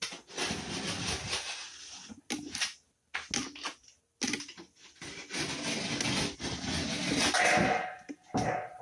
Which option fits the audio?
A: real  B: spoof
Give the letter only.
A